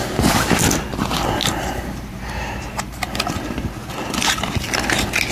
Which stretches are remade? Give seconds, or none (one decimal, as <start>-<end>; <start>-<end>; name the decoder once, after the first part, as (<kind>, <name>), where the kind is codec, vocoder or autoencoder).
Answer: 1.4-3.9 (vocoder, BigVGAN v2)